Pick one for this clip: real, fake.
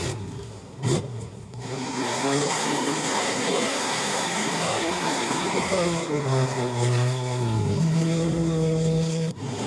fake